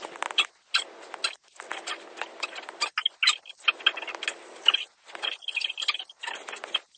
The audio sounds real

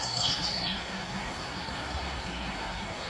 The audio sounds fake